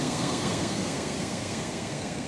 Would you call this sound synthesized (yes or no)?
yes